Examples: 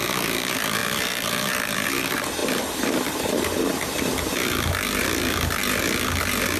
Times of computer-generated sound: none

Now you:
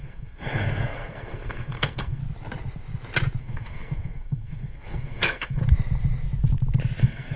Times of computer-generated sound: 0.0-2.2 (codec, SNAC); 3.4-5.6; 7.0-7.4